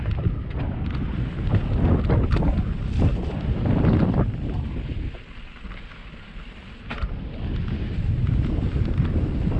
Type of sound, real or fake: real